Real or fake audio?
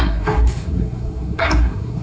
fake